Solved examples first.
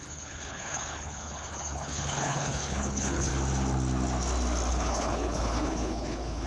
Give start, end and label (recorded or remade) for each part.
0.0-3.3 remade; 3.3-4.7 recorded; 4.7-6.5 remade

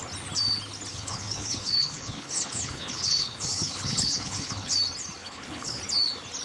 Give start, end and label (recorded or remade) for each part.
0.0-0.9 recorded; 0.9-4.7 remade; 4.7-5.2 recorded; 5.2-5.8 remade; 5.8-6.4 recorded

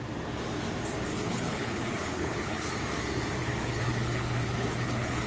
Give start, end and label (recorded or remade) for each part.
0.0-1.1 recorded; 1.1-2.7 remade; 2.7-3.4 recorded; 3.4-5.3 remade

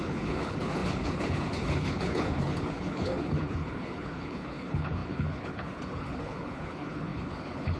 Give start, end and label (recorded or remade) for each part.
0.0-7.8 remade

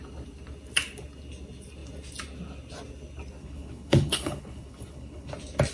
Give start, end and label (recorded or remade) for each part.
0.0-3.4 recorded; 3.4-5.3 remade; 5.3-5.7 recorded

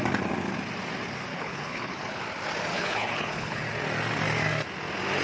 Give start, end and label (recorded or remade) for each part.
0.0-1.3 recorded; 1.3-2.2 remade; 2.2-2.7 recorded; 2.7-3.6 remade; 3.6-5.2 recorded